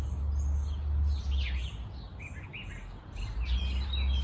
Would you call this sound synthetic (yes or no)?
no